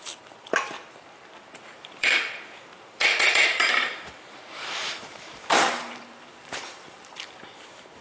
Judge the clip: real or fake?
fake